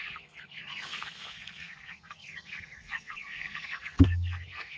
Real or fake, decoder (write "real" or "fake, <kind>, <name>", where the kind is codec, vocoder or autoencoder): fake, codec, SNAC